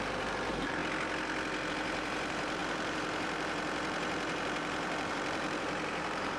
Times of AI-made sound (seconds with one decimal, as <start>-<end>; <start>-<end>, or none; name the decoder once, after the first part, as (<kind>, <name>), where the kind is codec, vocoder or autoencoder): 0.0-0.8 (vocoder, BigVGAN v2); 1.7-6.4